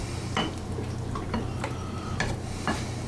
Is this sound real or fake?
real